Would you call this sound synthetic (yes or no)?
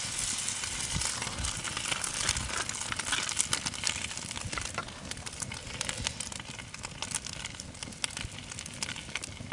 no